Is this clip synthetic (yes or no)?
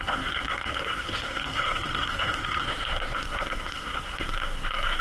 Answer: yes